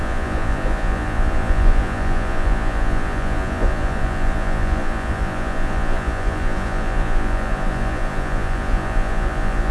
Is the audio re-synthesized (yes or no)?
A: yes